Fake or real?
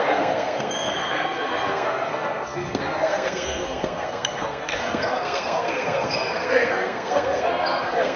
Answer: fake